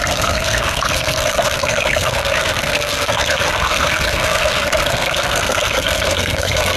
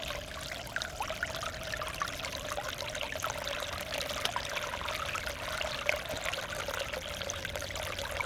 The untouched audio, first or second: second